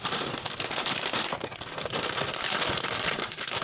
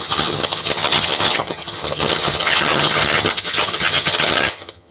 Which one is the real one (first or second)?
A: first